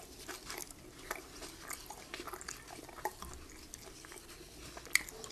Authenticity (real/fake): real